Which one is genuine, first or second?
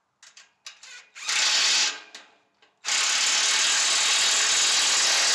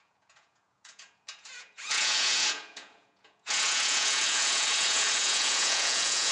first